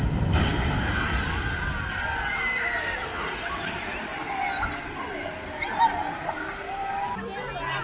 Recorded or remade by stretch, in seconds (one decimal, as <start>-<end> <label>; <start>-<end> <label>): 0.0-7.8 recorded